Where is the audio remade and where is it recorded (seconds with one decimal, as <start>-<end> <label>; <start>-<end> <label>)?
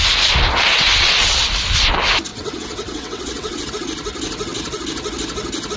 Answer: 0.0-0.7 recorded; 0.7-1.5 remade; 1.5-2.3 recorded; 2.3-3.7 remade; 3.7-5.8 recorded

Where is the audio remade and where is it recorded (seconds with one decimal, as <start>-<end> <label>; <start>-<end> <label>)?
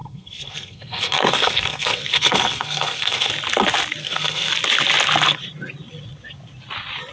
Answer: 0.0-3.3 remade; 3.3-4.0 recorded; 4.0-4.5 remade; 4.5-7.1 recorded